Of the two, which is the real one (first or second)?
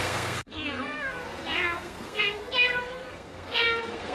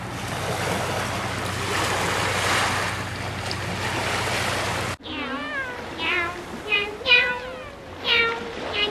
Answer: second